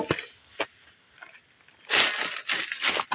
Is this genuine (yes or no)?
yes